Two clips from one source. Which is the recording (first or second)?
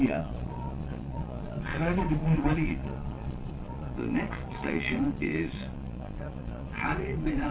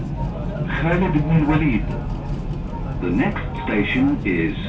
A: second